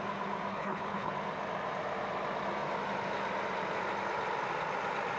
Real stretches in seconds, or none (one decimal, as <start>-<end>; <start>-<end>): 0.0-0.5; 1.1-5.2